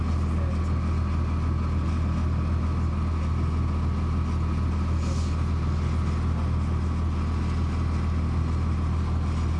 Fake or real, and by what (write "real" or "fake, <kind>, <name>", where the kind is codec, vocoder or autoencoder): real